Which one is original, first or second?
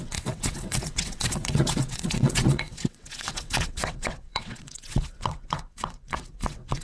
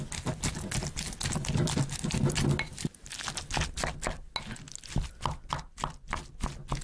second